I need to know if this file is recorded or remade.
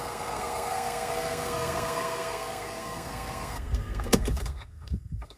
remade